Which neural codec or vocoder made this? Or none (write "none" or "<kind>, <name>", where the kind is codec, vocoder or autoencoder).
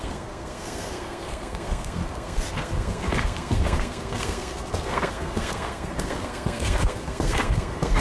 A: codec, SNAC